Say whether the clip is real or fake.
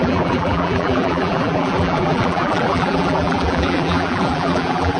fake